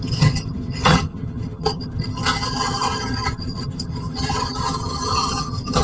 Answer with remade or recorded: remade